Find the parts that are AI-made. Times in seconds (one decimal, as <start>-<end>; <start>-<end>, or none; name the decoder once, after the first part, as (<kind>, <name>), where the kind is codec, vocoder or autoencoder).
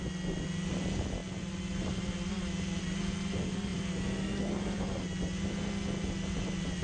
none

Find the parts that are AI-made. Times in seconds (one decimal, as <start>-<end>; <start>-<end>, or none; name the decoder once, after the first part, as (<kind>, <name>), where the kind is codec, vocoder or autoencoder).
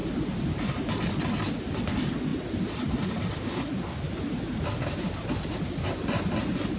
none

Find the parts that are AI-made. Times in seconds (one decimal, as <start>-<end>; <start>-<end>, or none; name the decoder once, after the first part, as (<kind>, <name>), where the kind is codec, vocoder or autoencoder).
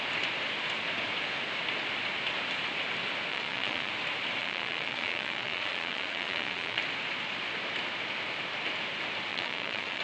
3.3-3.9 (vocoder, Vocos); 4.4-6.8; 9.3-10.0